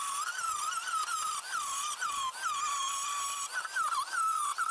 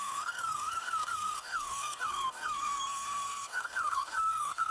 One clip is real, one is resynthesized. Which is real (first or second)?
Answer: first